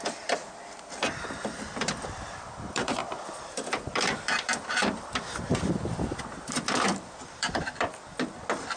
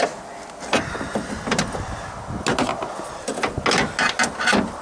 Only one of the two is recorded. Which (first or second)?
second